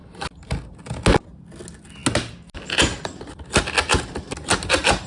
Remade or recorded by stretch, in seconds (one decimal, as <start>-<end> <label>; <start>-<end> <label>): 0.0-5.1 recorded